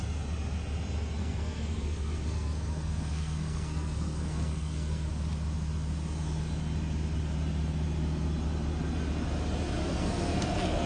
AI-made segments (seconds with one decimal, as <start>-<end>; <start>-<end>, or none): 1.2-5.1; 9.8-10.9